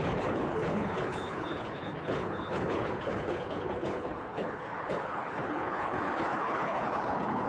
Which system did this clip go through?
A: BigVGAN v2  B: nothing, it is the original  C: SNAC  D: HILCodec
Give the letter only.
D